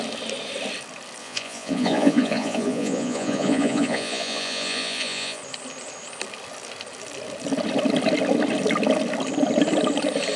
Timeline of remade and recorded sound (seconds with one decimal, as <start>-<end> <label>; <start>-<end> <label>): 0.0-1.2 recorded; 1.2-5.4 remade; 5.4-10.4 recorded